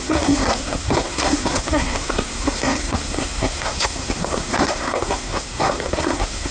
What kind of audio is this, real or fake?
fake